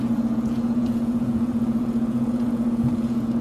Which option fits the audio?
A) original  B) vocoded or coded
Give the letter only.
B